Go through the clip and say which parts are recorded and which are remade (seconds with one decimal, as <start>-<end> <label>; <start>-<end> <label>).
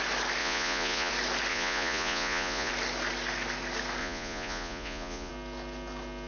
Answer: 0.0-0.4 recorded; 0.4-1.1 remade; 1.1-1.5 recorded; 1.5-2.7 remade; 2.7-4.0 recorded; 4.0-5.3 remade; 5.3-6.3 recorded